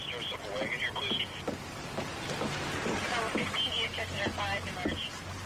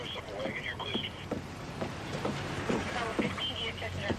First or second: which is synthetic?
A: second